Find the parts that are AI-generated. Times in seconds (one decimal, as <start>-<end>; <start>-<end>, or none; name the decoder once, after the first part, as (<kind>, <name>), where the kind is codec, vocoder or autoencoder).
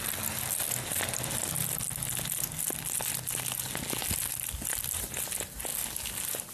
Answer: none